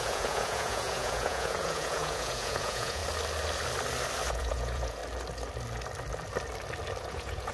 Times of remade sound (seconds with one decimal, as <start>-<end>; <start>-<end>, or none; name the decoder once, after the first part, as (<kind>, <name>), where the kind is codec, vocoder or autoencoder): 0.0-3.0 (vocoder, Vocos); 4.3-5.0; 7.0-7.5